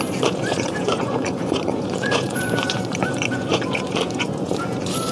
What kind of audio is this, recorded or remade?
remade